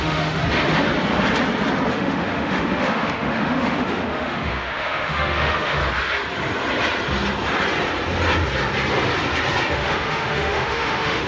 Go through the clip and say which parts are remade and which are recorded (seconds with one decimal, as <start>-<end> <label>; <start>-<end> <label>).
0.0-0.4 remade; 0.4-1.9 recorded; 1.9-5.8 remade; 5.8-9.7 recorded; 9.7-11.3 remade